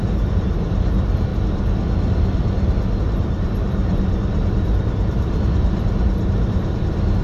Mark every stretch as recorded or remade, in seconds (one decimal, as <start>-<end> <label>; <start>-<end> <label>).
0.0-1.3 remade; 1.3-3.0 recorded; 3.0-3.8 remade; 3.8-4.8 recorded; 4.8-7.2 remade